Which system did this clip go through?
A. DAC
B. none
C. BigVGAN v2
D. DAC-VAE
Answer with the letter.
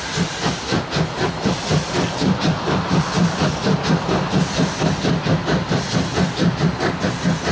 B